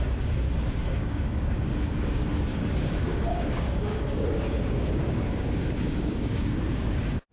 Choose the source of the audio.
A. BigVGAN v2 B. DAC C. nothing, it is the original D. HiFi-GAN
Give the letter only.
B